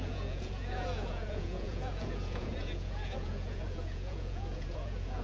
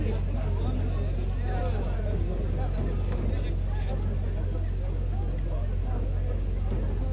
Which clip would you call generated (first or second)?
first